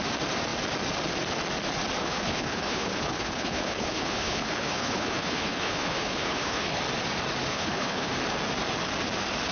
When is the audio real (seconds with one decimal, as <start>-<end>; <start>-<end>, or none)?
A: 0.0-2.0; 6.8-7.5; 8.1-9.5